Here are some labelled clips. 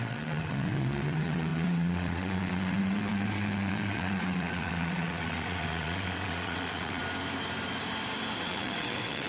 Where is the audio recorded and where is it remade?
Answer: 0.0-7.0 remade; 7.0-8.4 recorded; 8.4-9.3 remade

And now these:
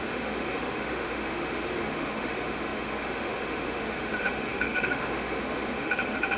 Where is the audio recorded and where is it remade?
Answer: 0.0-6.4 remade

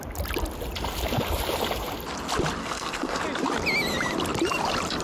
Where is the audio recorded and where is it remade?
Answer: 0.0-2.6 recorded; 2.6-3.2 remade; 3.2-5.0 recorded

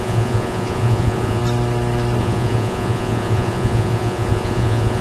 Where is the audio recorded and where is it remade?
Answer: 0.0-1.4 remade; 1.4-2.2 recorded; 2.2-5.0 remade

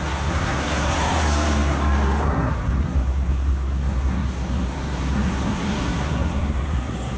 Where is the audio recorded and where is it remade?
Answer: 0.0-7.2 remade

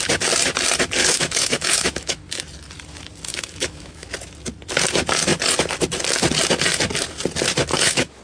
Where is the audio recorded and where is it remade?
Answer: 0.0-1.0 recorded; 1.0-2.2 remade; 2.2-3.3 recorded; 3.3-4.1 remade; 4.1-7.7 recorded; 7.7-8.2 remade

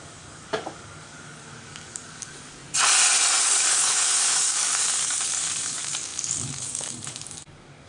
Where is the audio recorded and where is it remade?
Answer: 0.0-2.6 remade; 2.6-3.4 recorded; 3.4-7.9 remade